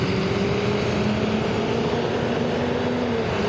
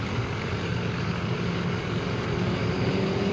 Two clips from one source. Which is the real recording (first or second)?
first